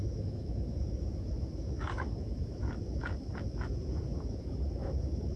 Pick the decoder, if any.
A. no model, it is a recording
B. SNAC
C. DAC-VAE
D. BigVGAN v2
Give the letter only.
C